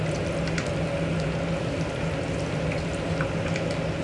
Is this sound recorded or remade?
recorded